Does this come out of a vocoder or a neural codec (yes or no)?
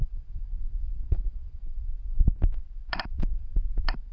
yes